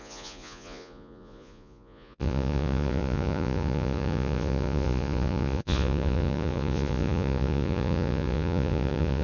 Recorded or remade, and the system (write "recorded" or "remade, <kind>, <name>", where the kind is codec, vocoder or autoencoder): remade, vocoder, Vocos